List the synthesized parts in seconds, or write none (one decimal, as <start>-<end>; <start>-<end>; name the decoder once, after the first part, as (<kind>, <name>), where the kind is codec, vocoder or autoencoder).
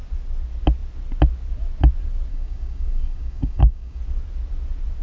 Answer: 2.3-4.0 (codec, DAC)